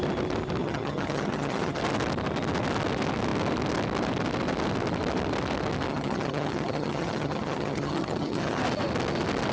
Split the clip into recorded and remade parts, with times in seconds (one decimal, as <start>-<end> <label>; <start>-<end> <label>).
0.0-0.6 recorded; 0.6-1.8 remade; 1.8-5.9 recorded; 5.9-8.6 remade; 8.6-9.5 recorded

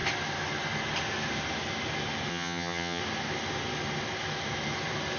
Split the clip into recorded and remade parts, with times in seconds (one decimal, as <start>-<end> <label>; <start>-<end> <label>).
0.0-2.3 recorded; 2.3-3.0 remade; 3.0-5.2 recorded